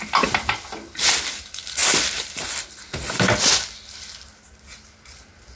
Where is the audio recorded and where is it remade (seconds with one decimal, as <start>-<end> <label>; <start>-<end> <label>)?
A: 0.0-5.6 recorded